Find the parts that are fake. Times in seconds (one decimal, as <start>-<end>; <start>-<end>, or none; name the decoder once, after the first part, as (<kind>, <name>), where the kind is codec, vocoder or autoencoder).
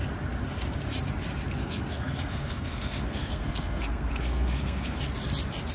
1.6-5.0 (codec, SNAC)